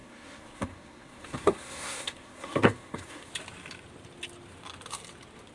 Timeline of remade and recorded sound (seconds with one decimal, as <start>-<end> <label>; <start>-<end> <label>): 0.0-3.3 remade; 3.3-5.5 recorded